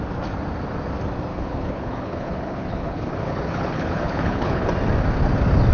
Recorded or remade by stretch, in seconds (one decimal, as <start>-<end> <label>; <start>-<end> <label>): 0.0-1.3 recorded; 1.3-4.7 remade; 4.7-5.7 recorded